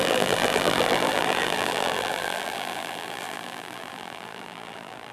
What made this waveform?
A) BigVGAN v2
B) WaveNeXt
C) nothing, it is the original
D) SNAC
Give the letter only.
A